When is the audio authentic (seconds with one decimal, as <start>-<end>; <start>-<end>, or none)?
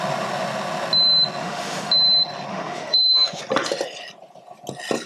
0.0-1.4; 1.9-2.5; 3.4-5.1